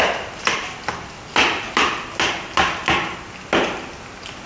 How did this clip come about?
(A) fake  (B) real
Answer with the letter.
B